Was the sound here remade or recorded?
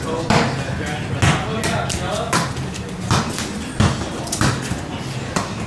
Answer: recorded